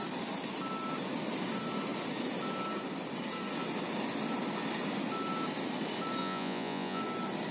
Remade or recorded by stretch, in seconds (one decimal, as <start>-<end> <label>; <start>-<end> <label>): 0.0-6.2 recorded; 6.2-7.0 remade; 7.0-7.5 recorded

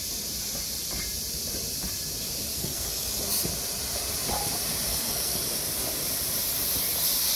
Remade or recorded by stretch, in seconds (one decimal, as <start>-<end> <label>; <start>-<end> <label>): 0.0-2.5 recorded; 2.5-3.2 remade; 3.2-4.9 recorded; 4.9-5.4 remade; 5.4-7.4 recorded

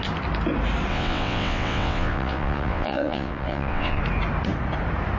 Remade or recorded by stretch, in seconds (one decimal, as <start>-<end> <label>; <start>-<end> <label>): 0.0-0.9 recorded; 0.9-4.0 remade; 4.0-5.2 recorded

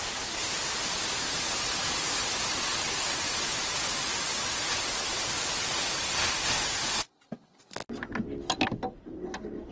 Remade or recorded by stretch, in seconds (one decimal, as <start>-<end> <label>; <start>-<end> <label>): 0.0-9.7 recorded

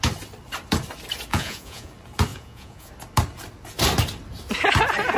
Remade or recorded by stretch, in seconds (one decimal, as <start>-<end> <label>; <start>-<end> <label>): 0.0-1.3 recorded; 1.3-1.9 remade; 1.9-2.3 recorded; 2.3-2.9 remade; 2.9-5.2 recorded

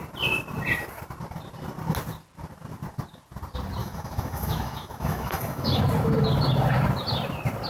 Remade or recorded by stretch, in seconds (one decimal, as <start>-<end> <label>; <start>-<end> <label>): 0.0-3.8 recorded; 3.8-5.8 remade; 5.8-7.7 recorded